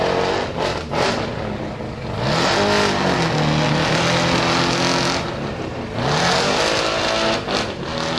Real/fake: real